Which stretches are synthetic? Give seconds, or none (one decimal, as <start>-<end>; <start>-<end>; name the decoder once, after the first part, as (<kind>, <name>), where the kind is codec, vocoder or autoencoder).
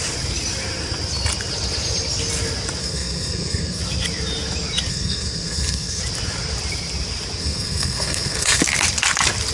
2.8-3.8 (codec, SNAC); 4.9-6.0; 7.4-8.6